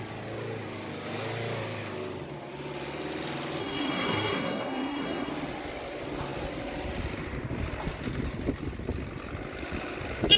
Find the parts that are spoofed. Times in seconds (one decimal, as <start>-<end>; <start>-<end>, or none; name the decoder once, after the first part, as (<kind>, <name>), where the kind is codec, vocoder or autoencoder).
3.6-5.3 (codec, SNAC)

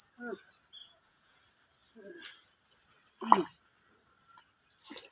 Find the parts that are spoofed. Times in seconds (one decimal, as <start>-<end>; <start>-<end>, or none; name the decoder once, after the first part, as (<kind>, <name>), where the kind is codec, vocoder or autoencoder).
0.8-1.4 (vocoder, Vocos)

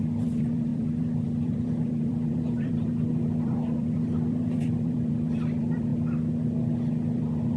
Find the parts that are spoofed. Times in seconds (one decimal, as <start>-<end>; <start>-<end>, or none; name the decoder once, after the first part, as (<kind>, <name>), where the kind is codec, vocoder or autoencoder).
0.0-5.9 (vocoder, BigVGAN v2); 6.9-7.6

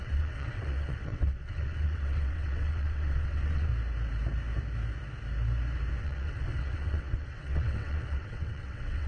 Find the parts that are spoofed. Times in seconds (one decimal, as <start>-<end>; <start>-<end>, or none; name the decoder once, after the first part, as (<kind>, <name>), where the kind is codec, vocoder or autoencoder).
0.0-3.7 (vocoder, WaveNeXt); 6.0-9.1

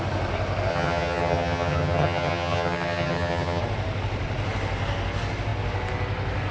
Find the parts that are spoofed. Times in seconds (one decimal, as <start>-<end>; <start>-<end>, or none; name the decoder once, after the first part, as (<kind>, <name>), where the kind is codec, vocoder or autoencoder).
0.7-3.6 (vocoder, HiFi-GAN)

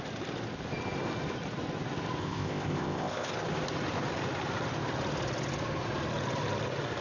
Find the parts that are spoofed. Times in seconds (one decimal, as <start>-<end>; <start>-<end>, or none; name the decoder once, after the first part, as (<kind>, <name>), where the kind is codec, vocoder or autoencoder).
2.2-3.3 (codec, ZipCodec)

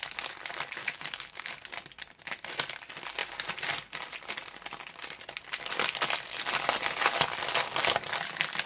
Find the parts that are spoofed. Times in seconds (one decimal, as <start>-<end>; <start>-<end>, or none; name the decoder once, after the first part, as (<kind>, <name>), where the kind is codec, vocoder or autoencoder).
0.8-1.5 (autoencoder, DAC-VAE)

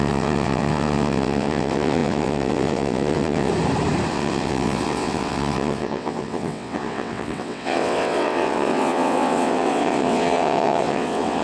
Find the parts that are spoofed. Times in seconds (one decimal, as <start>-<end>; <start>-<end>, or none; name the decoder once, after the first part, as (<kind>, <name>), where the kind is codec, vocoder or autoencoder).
0.0-3.5 (vocoder, WaveNeXt); 4.1-11.4